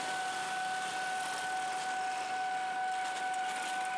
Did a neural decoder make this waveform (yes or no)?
no